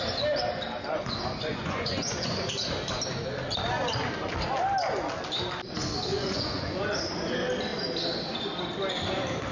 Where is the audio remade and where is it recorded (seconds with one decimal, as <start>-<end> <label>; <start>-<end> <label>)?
0.0-1.5 recorded; 1.5-2.5 remade; 2.5-6.1 recorded; 6.1-6.8 remade; 6.8-9.5 recorded